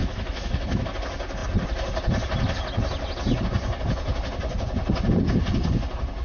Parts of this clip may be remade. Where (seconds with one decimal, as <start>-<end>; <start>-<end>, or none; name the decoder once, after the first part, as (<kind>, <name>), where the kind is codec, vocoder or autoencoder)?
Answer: 0.0-0.9 (autoencoder, DAC-VAE)